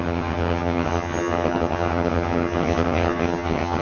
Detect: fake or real fake